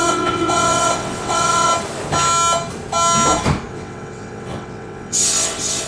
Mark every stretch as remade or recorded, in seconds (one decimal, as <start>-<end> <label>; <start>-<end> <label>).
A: 0.0-1.7 remade; 1.7-3.7 recorded; 3.7-5.9 remade